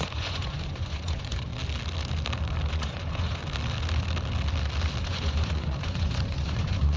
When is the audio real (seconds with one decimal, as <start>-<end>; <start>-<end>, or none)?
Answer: 1.5-2.7; 3.4-5.0